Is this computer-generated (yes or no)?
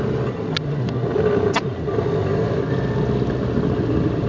no